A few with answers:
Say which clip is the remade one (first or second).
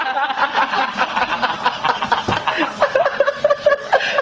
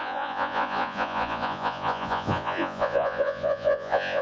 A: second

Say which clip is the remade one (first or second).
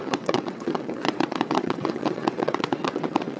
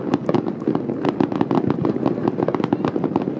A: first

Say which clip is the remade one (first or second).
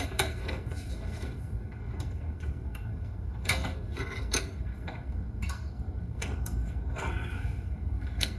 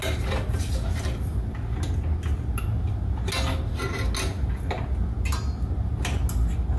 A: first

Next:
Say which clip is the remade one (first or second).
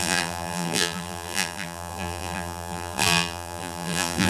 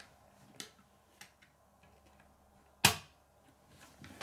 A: first